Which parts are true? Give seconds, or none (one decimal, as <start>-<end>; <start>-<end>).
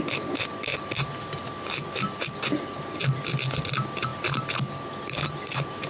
0.0-5.9